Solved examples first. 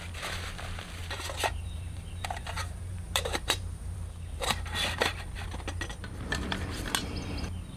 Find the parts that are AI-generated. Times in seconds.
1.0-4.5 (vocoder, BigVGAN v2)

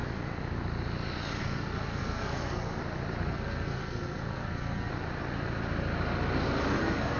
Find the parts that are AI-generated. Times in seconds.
1.4-2.8 (codec, SNAC); 3.3-4.9; 6.8-7.2

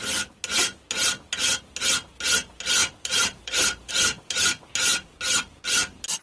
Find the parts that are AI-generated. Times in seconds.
2.8-3.9 (vocoder, BigVGAN v2)

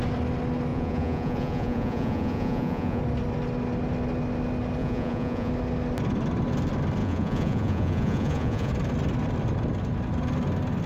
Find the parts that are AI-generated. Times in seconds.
0.7-3.0 (vocoder, Vocos); 4.8-5.5; 7.0-8.7

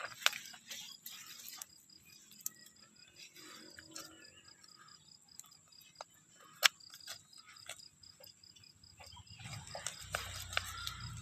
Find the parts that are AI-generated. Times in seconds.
none

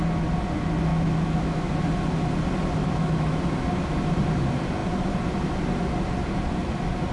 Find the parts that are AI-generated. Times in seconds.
0.9-1.7 (autoencoder, DAC-VAE); 2.8-3.4